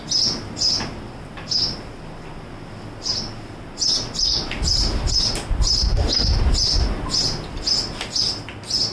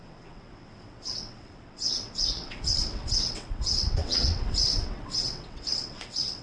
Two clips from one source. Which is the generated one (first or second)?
second